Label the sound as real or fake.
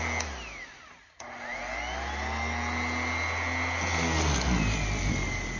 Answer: real